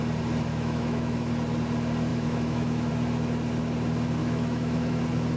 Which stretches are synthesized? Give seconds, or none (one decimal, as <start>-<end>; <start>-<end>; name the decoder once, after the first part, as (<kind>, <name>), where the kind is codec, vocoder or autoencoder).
0.5-1.3 (autoencoder, DAC-VAE); 2.1-2.9; 4.2-5.0